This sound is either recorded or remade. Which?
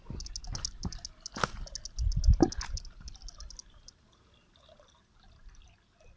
recorded